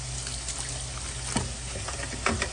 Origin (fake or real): real